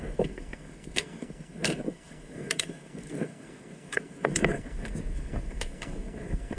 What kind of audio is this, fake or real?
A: fake